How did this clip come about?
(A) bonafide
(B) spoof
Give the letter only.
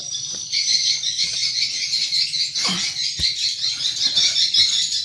A